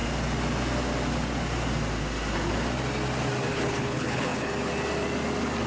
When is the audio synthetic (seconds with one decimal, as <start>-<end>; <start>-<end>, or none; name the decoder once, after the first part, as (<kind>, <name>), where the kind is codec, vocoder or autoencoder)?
3.5-4.5 (codec, HILCodec)